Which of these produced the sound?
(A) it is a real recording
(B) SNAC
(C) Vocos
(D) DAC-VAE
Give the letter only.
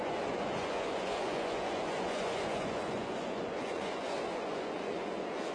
C